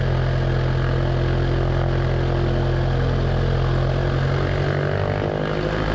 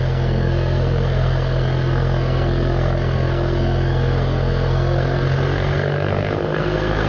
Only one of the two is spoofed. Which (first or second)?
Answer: second